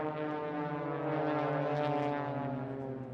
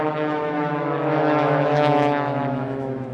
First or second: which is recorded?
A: first